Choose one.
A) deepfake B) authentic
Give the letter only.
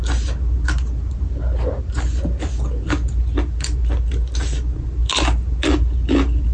B